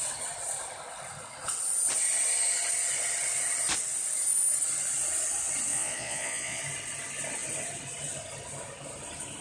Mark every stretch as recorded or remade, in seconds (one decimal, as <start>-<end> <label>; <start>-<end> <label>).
0.0-5.7 recorded; 5.7-6.6 remade; 6.6-9.4 recorded